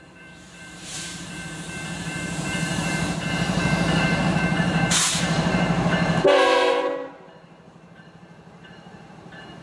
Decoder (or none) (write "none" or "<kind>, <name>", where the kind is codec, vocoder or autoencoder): vocoder, BigVGAN v2